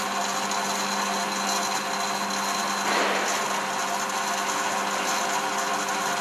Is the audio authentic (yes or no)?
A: yes